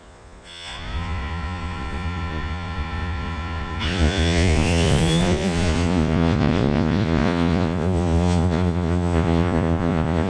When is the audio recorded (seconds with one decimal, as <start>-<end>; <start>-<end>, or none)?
none